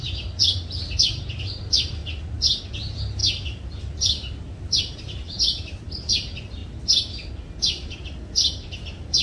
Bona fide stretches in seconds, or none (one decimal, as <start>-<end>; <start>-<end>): 2.0-2.6; 3.2-4.7; 6.6-7.3